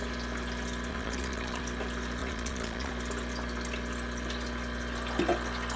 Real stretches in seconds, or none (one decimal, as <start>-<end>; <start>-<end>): 0.0-0.9; 1.6-2.2; 2.9-5.8